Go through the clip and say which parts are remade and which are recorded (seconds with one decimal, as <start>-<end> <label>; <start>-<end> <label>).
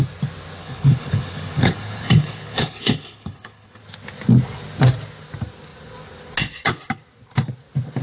0.0-0.6 recorded; 0.6-3.8 remade; 3.8-8.0 recorded